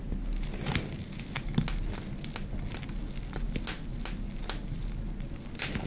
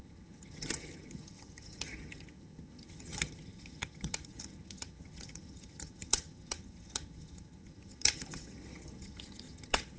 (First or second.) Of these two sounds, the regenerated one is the second